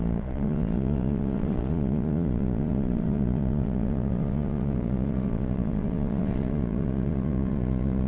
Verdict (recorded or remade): remade